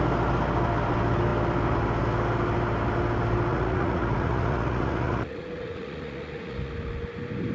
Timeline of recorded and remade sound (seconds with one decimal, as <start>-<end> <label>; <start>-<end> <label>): 0.0-3.5 recorded; 3.5-6.7 remade; 6.7-7.5 recorded